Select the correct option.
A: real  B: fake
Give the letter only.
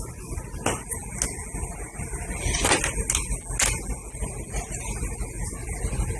A